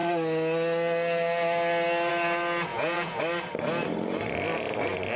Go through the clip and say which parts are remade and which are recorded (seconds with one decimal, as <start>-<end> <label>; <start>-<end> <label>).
0.0-2.7 recorded; 2.7-3.2 remade; 3.2-5.2 recorded